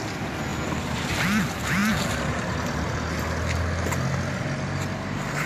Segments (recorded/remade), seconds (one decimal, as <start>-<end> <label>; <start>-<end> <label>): 0.0-5.5 recorded

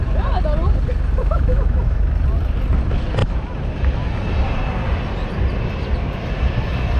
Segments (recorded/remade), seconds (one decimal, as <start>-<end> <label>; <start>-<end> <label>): 0.0-1.2 recorded; 1.2-2.0 remade; 2.0-7.0 recorded

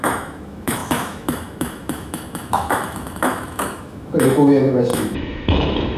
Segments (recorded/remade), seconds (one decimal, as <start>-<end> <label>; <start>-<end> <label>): 0.0-6.0 remade

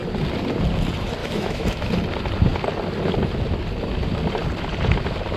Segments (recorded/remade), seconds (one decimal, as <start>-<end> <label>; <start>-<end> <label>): 0.0-1.2 recorded; 1.2-1.9 remade; 1.9-5.4 recorded

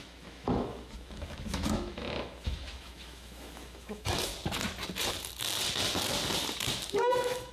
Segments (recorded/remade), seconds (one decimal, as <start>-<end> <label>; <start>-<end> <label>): 0.0-4.3 remade; 4.3-6.9 recorded; 6.9-7.5 remade